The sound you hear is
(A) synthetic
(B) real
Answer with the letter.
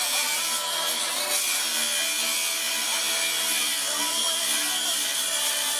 B